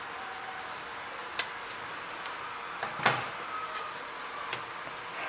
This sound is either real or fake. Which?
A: real